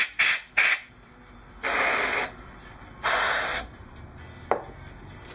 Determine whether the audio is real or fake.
real